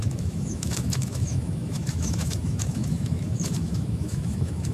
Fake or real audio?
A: fake